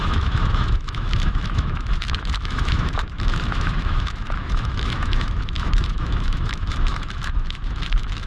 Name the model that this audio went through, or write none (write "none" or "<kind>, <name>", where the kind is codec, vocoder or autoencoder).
autoencoder, DAC-VAE